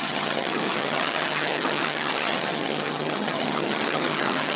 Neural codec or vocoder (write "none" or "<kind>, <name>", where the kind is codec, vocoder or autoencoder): vocoder, HiFi-GAN